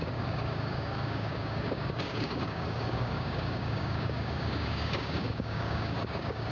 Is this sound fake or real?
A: fake